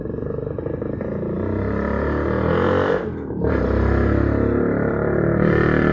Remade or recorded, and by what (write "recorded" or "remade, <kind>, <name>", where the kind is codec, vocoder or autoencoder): remade, vocoder, BigVGAN v2